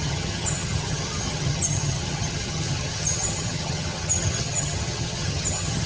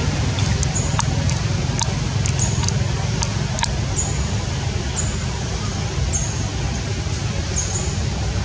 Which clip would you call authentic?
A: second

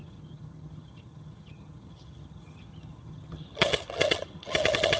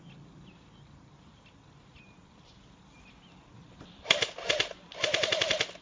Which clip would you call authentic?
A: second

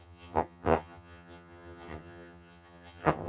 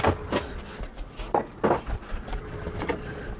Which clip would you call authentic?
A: second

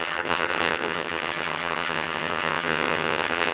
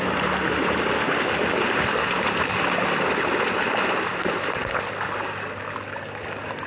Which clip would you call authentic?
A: second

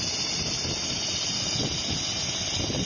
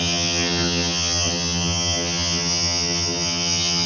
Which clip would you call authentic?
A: first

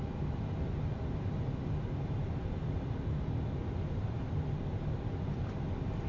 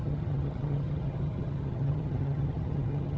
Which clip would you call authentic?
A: first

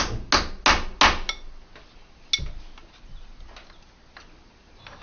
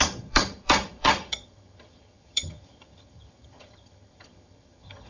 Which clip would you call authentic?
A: first